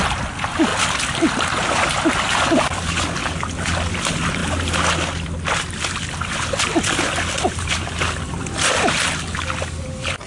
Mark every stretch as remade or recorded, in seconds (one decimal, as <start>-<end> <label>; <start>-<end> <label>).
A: 0.0-3.2 remade; 3.2-3.9 recorded; 3.9-4.4 remade; 4.4-6.1 recorded; 6.1-10.3 remade